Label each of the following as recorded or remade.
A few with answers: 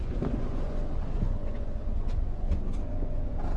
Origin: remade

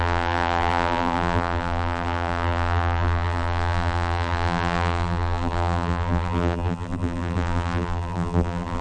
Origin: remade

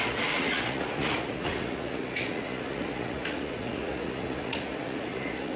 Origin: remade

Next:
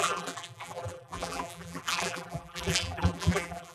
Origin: remade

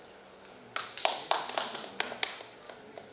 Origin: recorded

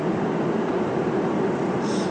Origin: recorded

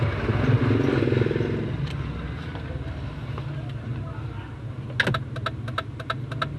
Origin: recorded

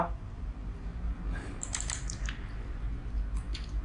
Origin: remade